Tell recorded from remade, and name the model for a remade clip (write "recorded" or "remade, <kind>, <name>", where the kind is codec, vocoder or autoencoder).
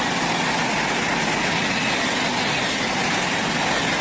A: recorded